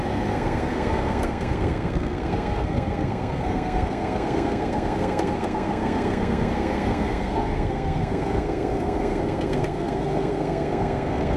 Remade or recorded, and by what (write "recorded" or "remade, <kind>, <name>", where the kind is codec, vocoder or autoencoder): remade, codec, SNAC